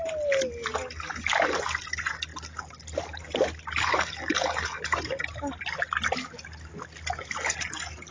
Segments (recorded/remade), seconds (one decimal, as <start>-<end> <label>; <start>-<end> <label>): 0.0-8.1 recorded